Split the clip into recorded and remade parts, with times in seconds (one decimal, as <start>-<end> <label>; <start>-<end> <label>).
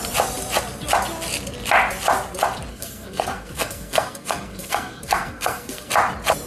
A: 0.0-2.7 recorded; 2.7-5.9 remade; 5.9-6.5 recorded